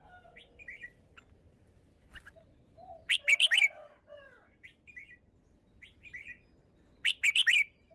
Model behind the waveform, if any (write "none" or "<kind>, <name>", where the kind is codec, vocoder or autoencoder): none